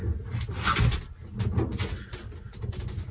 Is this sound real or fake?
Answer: real